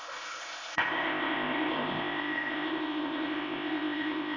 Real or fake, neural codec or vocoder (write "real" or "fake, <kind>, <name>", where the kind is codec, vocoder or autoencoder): fake, codec, ZipCodec